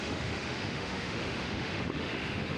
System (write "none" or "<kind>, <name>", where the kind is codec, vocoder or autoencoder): autoencoder, DAC-VAE